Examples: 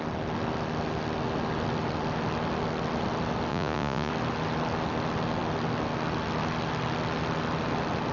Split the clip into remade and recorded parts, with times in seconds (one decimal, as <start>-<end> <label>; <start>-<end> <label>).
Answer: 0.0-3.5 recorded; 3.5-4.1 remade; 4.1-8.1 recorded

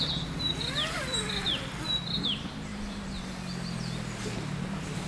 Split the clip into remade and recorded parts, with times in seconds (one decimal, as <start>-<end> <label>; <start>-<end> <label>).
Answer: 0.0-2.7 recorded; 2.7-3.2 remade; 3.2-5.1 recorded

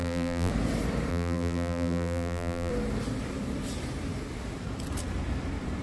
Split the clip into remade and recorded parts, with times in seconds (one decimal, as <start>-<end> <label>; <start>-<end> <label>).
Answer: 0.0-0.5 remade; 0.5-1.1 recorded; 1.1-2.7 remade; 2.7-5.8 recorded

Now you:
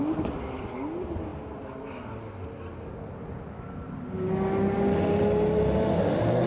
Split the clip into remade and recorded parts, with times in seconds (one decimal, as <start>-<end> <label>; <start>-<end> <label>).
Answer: 0.0-6.5 recorded